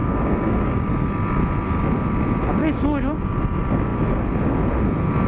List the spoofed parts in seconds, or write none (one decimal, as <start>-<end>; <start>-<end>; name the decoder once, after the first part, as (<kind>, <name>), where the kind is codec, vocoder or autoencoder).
0.0-0.9 (codec, DAC); 2.6-3.4